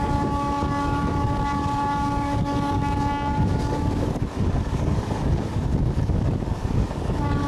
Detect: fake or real fake